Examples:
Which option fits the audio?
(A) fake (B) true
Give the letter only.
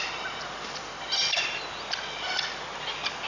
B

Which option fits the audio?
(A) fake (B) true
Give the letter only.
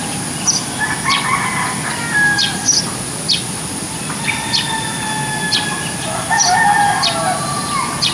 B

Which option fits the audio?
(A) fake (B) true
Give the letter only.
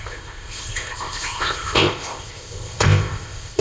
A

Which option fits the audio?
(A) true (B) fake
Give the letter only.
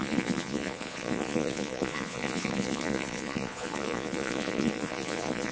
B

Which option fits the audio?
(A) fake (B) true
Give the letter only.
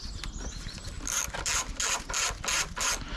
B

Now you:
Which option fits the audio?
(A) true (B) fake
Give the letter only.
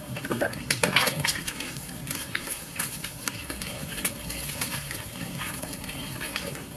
B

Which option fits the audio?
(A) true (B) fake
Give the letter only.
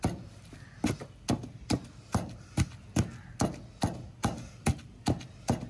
A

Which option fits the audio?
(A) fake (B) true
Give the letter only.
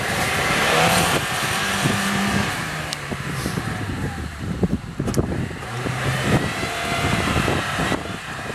A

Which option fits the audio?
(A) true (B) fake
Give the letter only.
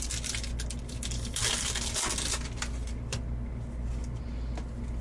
A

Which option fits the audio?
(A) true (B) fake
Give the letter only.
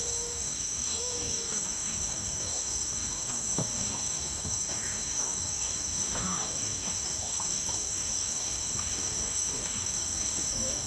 B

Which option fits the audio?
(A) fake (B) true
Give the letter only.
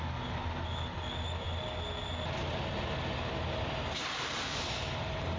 B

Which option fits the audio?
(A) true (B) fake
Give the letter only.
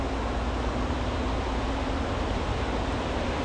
A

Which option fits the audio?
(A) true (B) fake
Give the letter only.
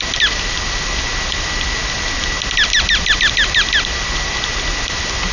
A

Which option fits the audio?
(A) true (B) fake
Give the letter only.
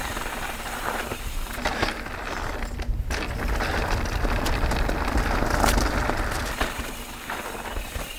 A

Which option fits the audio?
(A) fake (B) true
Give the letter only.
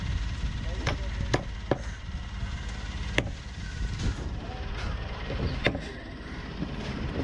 B